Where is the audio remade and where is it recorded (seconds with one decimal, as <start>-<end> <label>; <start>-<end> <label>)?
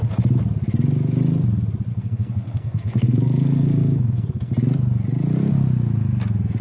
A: 0.0-1.9 recorded; 1.9-4.5 remade; 4.5-6.6 recorded